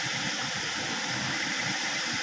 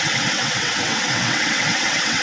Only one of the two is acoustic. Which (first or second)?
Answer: first